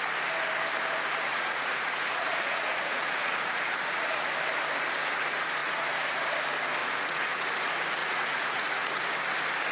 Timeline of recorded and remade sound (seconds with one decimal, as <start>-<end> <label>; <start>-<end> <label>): 0.0-1.3 recorded; 1.3-4.3 remade; 4.3-5.6 recorded; 5.6-6.2 remade; 6.2-6.8 recorded; 6.8-7.5 remade; 7.5-8.0 recorded; 8.0-9.0 remade; 9.0-9.7 recorded